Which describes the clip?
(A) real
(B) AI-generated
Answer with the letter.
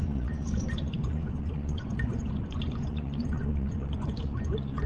B